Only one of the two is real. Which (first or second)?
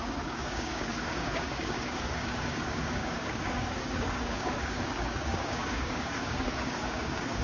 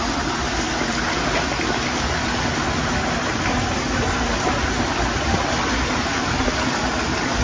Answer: second